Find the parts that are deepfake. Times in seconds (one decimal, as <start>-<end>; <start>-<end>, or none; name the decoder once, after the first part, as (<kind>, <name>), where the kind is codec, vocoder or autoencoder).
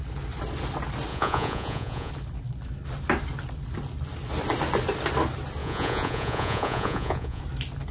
1.1-2.1 (vocoder, Vocos); 5.6-7.4